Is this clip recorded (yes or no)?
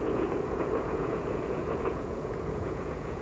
no